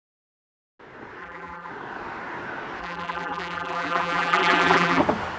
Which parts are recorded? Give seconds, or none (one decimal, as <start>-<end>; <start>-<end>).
0.0-1.2; 1.7-2.8; 5.0-5.4